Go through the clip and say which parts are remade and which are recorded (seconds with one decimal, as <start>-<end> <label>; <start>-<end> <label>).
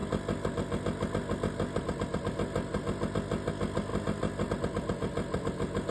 0.0-5.9 recorded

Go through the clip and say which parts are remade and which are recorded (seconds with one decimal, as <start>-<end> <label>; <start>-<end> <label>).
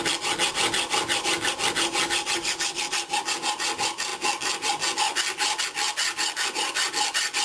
0.0-4.1 remade; 4.1-5.6 recorded; 5.6-7.4 remade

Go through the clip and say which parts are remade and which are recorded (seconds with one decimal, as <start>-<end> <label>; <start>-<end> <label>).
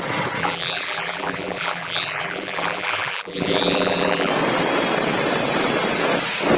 0.0-0.4 recorded; 0.4-4.3 remade; 4.3-6.6 recorded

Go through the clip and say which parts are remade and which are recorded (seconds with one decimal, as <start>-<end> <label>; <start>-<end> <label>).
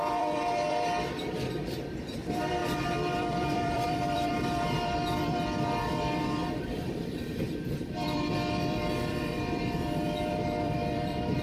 0.0-11.4 remade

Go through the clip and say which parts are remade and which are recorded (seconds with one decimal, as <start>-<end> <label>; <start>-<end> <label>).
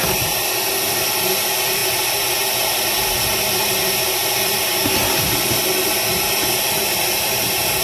0.0-7.8 recorded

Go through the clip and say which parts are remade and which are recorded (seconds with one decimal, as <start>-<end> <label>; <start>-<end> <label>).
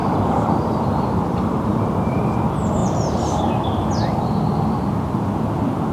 0.0-2.2 remade; 2.2-2.8 recorded; 2.8-3.5 remade; 3.5-5.9 recorded